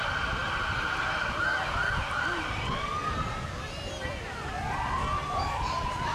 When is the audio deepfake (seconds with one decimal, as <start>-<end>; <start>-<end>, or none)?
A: none